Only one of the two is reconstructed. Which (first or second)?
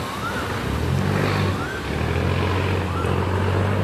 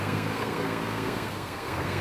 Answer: second